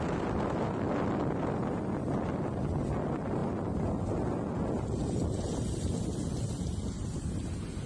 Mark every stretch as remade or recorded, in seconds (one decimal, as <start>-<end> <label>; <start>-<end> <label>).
0.0-7.9 recorded